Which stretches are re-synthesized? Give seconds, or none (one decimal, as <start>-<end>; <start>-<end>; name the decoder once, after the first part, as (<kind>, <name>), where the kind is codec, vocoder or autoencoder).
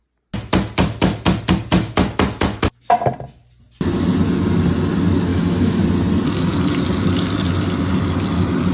5.3-5.8 (autoencoder, DAC-VAE)